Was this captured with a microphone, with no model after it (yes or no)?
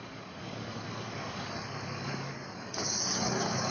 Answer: no